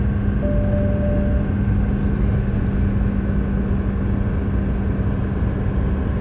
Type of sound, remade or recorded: recorded